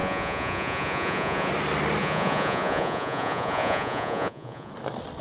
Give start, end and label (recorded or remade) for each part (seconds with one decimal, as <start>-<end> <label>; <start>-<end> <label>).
0.0-1.5 remade; 1.5-2.0 recorded; 2.0-4.7 remade; 4.7-5.2 recorded

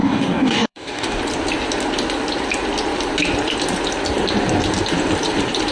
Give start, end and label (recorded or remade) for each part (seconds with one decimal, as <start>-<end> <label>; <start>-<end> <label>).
0.0-1.2 remade; 1.2-5.7 recorded